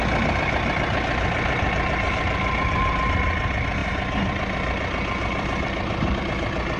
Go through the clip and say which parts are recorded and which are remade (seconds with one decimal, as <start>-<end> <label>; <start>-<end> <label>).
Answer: 0.0-6.8 recorded